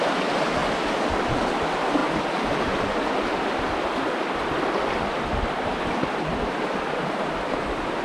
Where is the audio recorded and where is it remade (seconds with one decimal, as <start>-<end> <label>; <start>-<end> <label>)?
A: 0.0-8.0 recorded